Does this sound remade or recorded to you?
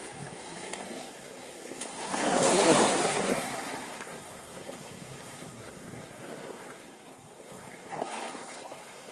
remade